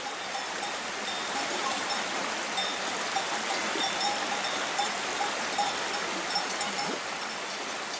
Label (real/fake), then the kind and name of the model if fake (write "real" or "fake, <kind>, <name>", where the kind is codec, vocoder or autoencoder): real